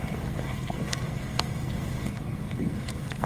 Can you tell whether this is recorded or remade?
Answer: remade